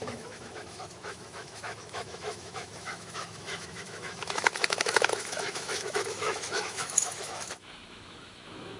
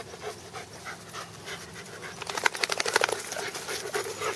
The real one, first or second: second